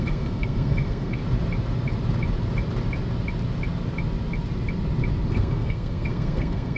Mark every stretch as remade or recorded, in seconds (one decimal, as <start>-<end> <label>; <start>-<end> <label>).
0.0-1.2 remade; 1.2-5.3 recorded; 5.3-6.8 remade